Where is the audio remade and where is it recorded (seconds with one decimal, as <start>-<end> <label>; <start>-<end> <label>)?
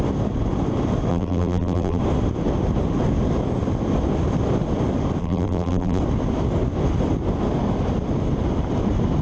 0.0-1.1 recorded; 1.1-2.0 remade; 2.0-5.2 recorded; 5.2-6.0 remade; 6.0-9.2 recorded